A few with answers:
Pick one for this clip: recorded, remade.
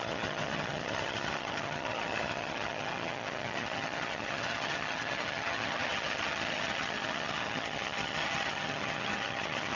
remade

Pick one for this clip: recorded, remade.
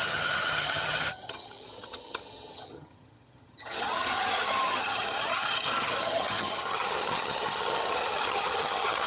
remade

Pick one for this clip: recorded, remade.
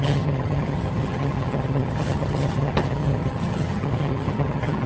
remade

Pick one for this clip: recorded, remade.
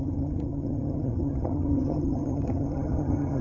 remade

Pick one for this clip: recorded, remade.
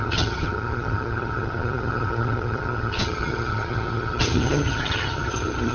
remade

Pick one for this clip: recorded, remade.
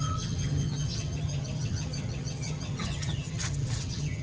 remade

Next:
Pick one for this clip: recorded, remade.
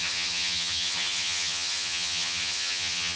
remade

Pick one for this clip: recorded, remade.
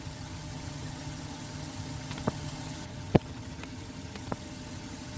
remade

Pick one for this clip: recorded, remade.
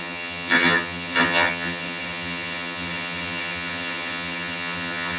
remade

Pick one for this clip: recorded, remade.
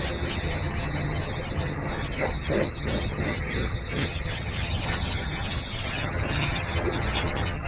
remade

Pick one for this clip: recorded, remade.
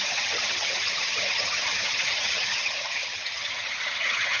remade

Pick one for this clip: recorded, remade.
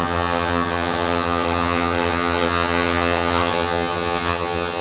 remade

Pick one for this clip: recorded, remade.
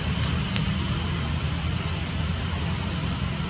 recorded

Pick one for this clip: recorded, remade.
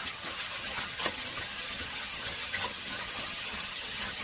remade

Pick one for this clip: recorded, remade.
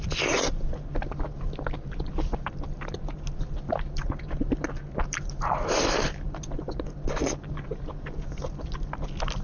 recorded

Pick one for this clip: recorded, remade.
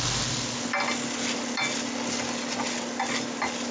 recorded